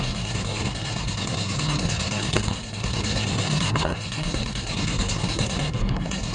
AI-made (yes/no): yes